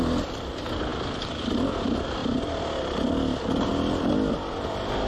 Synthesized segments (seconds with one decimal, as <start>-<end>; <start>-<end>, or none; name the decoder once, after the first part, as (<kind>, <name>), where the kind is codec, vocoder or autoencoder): none